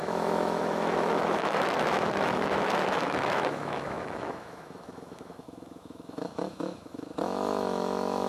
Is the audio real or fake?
fake